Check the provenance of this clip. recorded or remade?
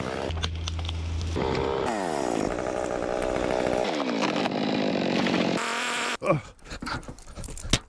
recorded